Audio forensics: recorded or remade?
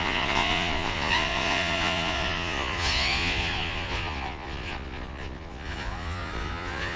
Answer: remade